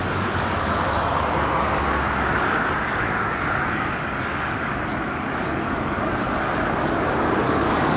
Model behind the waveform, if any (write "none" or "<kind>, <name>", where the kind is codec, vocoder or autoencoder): codec, DAC